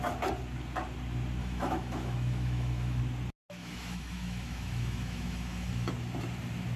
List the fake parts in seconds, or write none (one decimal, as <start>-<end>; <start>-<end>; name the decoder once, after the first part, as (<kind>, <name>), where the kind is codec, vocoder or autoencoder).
1.4-3.0 (autoencoder, DAC-VAE); 3.6-5.9